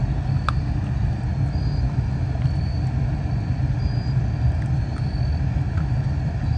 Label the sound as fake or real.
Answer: real